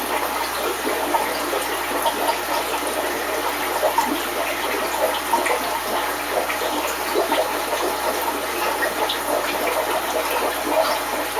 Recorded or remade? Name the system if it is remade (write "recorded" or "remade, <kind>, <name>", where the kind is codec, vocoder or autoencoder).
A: recorded